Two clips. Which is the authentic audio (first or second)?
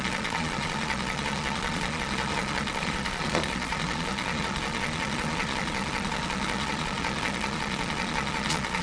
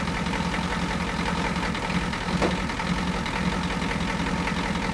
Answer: second